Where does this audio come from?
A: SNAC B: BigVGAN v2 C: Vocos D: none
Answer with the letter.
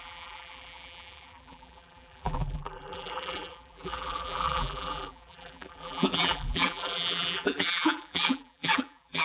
B